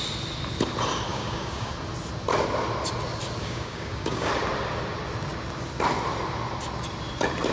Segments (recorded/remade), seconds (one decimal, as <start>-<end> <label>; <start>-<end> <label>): 0.0-1.1 recorded; 1.1-1.7 remade; 1.7-3.4 recorded; 3.4-4.3 remade; 4.3-7.5 recorded